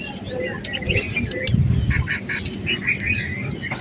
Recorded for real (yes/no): yes